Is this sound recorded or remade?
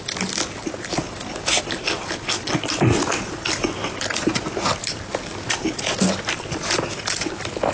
recorded